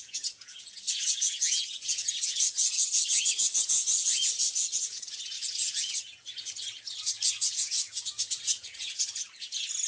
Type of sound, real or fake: fake